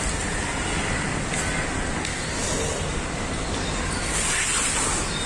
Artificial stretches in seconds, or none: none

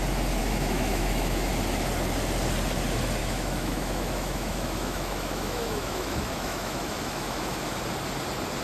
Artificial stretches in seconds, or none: 0.4-1.5 (autoencoder, DAC-VAE); 3.2-7.8

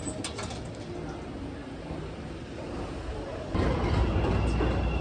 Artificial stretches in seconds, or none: none

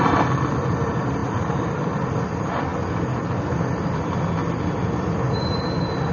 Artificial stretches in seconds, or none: none

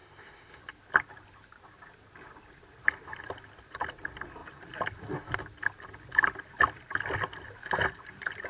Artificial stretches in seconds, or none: 0.0-0.6 (autoencoder, DAC-VAE)